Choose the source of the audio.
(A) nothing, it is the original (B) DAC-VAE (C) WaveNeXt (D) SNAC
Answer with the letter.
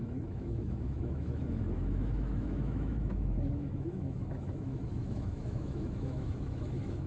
B